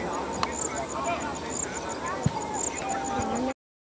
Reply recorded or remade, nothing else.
recorded